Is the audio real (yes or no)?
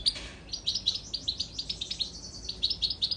yes